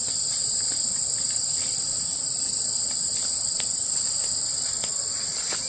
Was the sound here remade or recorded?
recorded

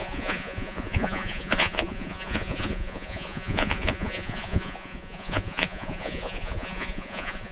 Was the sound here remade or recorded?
remade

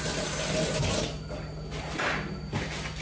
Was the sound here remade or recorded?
recorded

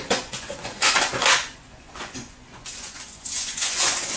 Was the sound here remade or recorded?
remade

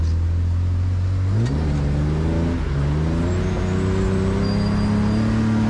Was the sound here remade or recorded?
recorded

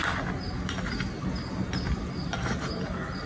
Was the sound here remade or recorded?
recorded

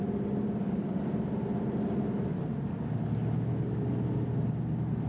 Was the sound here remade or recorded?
recorded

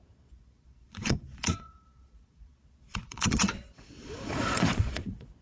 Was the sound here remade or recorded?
remade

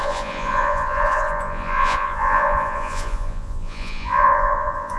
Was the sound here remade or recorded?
remade